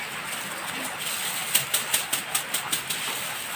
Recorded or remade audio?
recorded